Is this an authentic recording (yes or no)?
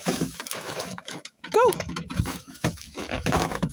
no